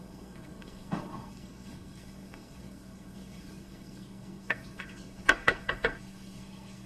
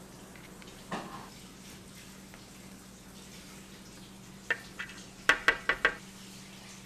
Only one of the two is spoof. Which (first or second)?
first